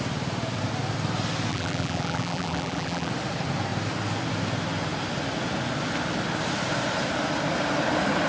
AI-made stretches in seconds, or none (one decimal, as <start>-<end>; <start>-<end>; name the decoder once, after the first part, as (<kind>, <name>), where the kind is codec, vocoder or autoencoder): 1.5-3.1 (vocoder, BigVGAN v2)